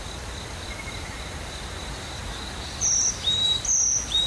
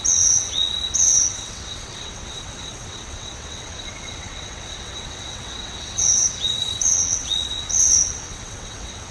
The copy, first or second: second